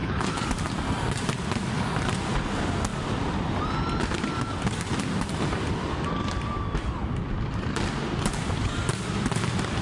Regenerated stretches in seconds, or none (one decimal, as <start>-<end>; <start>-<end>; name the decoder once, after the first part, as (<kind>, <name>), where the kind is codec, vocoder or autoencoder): 0.0-0.5 (codec, HILCodec)